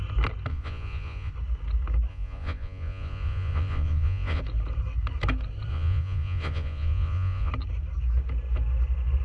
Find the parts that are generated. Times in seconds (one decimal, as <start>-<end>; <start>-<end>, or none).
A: 0.5-1.3; 2.1-4.4; 5.7-7.5